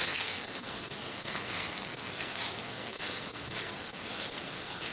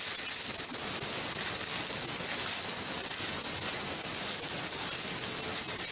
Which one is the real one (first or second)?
second